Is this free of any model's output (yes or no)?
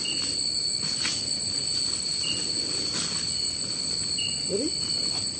yes